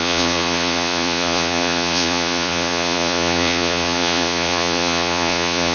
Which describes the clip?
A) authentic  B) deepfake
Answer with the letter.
B